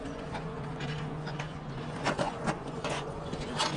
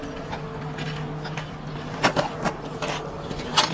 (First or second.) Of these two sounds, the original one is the second